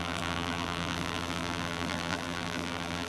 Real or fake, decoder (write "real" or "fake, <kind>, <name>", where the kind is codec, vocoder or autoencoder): fake, vocoder, BigVGAN v2